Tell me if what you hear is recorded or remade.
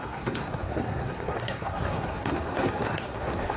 remade